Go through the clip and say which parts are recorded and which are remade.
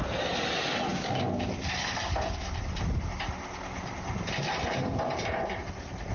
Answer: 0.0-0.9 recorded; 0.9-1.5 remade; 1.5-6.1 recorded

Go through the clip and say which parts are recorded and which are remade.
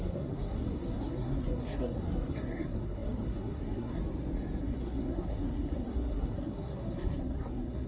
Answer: 0.0-4.0 remade; 4.0-4.6 recorded; 4.6-7.9 remade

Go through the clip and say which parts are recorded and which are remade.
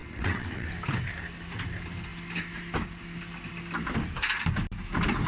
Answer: 0.0-0.7 remade; 0.7-5.3 recorded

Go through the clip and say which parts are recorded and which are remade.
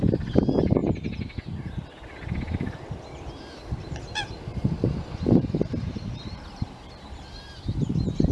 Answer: 0.0-0.8 remade; 0.8-5.8 recorded; 5.8-8.3 remade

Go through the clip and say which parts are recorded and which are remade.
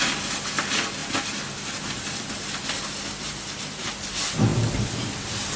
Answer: 0.0-5.6 recorded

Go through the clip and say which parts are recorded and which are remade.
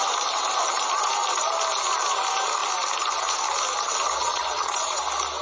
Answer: 0.0-4.2 recorded; 4.2-5.0 remade; 5.0-5.4 recorded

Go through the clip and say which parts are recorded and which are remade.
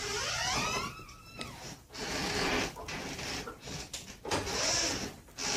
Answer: 0.0-5.6 recorded